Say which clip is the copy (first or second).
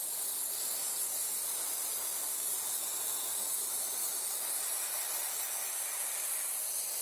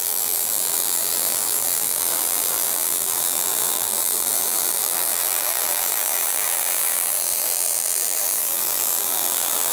second